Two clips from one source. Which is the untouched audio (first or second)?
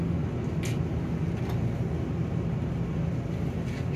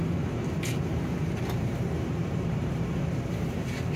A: first